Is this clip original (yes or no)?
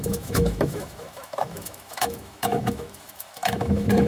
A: no